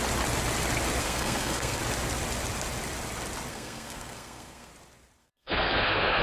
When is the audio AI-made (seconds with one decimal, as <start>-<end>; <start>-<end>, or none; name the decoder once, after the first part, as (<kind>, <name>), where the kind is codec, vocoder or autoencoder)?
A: 1.0-1.8 (codec, SNAC); 3.5-4.7; 5.2-6.2